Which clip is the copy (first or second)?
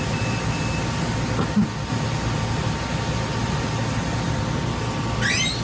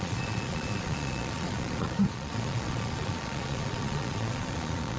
second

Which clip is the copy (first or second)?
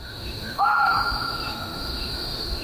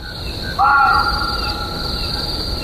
first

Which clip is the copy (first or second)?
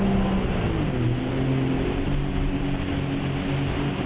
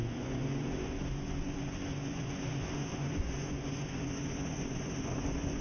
second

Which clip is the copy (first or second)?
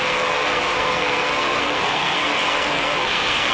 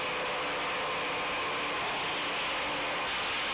first